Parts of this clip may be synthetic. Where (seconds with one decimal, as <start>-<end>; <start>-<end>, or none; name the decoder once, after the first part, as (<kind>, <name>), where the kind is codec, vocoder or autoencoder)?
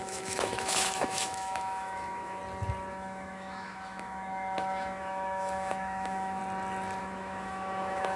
0.0-2.4 (autoencoder, DAC-VAE); 2.9-6.4; 7.0-8.2